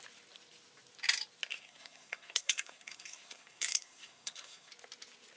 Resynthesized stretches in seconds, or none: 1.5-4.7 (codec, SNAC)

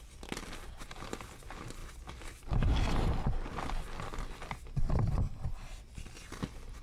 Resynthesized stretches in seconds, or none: none

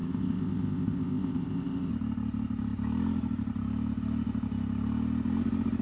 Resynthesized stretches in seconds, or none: 0.0-1.9 (codec, ZipCodec)

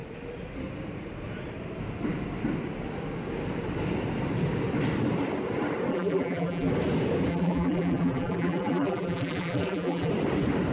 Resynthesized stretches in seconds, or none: 5.9-6.7 (vocoder, BigVGAN v2); 7.3-10.1